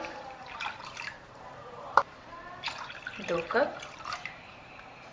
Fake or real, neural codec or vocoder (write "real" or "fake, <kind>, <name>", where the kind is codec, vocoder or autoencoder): fake, vocoder, BigVGAN v2